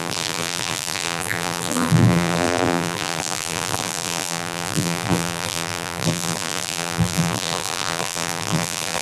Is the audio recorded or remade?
remade